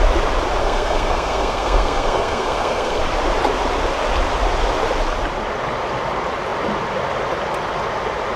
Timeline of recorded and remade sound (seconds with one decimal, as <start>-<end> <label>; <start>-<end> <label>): 0.0-0.6 recorded; 0.6-3.0 remade; 3.0-8.4 recorded